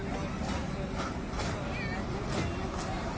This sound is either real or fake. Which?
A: real